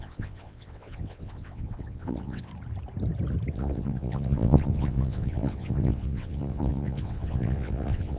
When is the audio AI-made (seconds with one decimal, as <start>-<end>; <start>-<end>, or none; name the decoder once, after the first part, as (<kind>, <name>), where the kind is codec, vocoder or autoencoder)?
0.0-2.5 (vocoder, WaveNeXt); 3.5-8.2